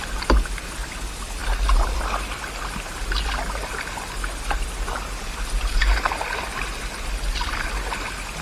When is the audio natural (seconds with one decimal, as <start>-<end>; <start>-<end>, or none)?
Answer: 0.0-8.4